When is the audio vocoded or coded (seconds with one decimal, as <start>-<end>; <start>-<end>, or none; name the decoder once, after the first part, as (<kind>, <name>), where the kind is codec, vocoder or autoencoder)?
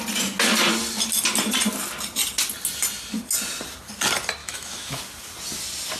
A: 4.4-5.0 (autoencoder, DAC-VAE)